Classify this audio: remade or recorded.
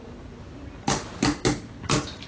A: recorded